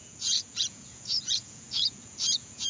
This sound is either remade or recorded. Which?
remade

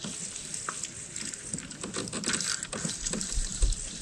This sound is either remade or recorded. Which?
recorded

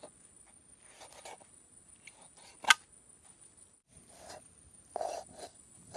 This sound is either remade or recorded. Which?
recorded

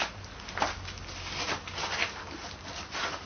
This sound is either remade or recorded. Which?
recorded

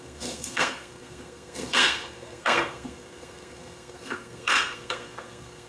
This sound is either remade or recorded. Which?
remade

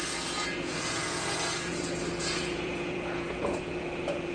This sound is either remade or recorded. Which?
remade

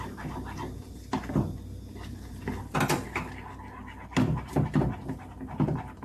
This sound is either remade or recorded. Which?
recorded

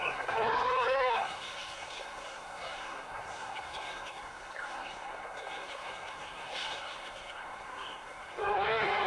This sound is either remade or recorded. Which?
remade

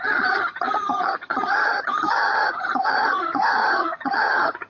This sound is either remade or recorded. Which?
remade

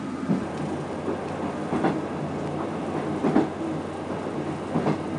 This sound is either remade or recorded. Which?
recorded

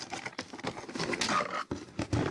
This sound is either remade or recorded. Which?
recorded